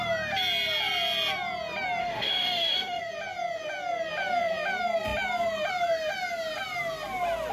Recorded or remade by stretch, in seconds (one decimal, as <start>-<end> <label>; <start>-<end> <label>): 0.0-2.0 recorded; 2.0-3.0 remade; 3.0-7.5 recorded